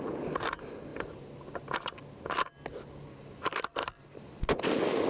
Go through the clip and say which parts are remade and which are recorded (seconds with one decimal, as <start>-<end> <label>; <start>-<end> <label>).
0.0-0.9 recorded; 0.9-1.5 remade; 1.5-3.8 recorded; 3.8-4.4 remade; 4.4-5.1 recorded